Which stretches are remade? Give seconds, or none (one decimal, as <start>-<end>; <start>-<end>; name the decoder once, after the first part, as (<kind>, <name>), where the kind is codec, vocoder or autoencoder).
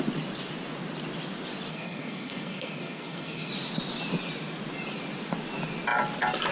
1.7-3.5 (codec, SNAC)